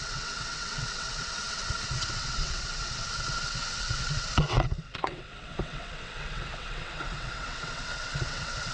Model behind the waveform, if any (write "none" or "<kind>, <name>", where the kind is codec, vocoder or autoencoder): vocoder, WaveNeXt